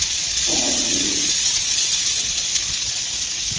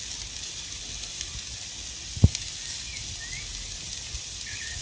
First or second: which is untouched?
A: second